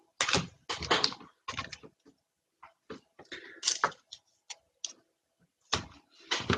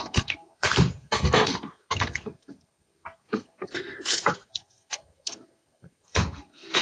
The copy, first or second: second